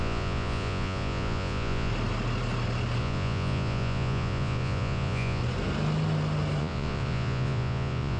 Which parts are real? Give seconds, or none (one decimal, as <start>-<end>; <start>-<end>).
1.9-3.0; 5.4-6.6